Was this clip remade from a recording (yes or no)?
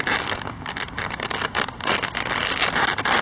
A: no